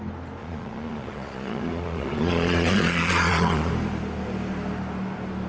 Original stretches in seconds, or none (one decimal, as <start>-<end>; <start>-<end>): 0.0-0.4; 3.7-5.5

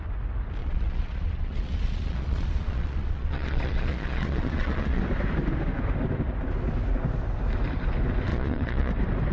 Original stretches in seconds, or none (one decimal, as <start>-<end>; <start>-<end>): 0.0-0.6; 5.0-8.3; 8.9-9.3

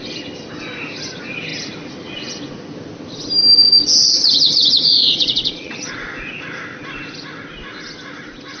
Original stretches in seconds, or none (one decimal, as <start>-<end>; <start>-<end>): 0.0-4.0; 5.9-8.6

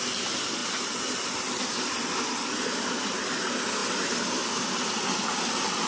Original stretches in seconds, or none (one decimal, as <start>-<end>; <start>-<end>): 0.0-5.9

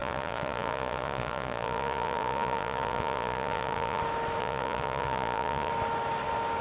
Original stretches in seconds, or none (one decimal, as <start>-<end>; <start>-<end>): 4.0-4.4; 5.7-6.6

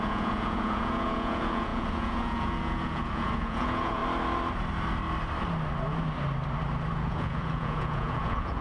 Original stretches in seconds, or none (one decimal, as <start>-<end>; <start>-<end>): 4.0-6.9